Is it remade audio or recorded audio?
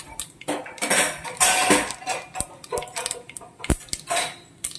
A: recorded